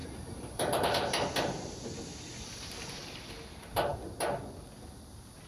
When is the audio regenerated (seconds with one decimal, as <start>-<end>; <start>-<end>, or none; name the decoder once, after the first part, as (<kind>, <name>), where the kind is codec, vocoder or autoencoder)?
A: 0.0-3.3 (vocoder, BigVGAN v2)